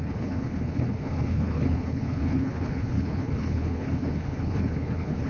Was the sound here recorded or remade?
remade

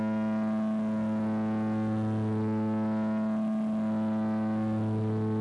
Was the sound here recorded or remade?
recorded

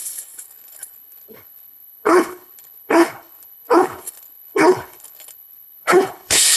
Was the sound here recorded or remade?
remade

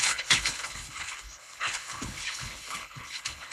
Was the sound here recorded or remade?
remade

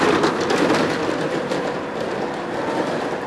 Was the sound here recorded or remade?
recorded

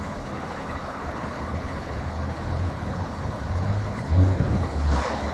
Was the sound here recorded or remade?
remade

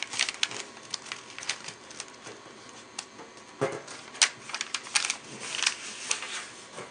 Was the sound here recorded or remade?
recorded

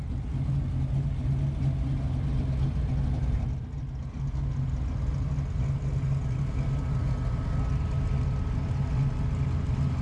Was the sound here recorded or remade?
recorded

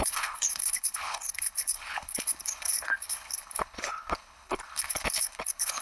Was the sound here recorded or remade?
remade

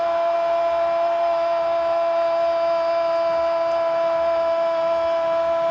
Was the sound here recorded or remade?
recorded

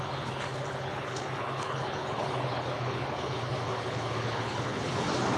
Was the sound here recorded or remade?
remade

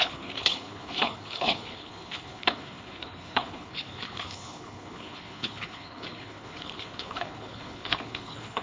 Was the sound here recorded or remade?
remade